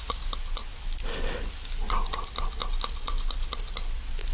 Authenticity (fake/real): real